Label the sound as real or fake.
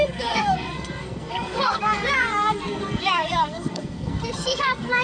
fake